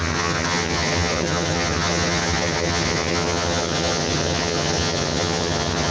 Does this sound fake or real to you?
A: fake